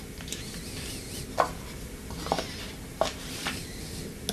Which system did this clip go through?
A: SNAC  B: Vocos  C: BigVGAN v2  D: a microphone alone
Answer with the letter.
D